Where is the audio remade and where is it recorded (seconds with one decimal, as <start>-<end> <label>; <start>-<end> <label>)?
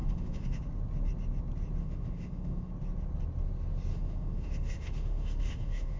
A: 0.0-0.6 remade; 0.6-1.8 recorded; 1.8-2.7 remade; 2.7-3.9 recorded; 3.9-6.0 remade